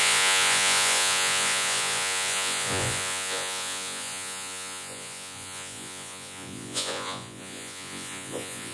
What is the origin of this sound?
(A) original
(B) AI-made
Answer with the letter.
B